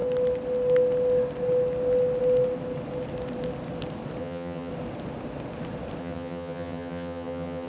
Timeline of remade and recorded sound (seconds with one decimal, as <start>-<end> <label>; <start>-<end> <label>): 0.0-4.2 recorded; 4.2-4.7 remade; 4.7-6.0 recorded; 6.0-7.7 remade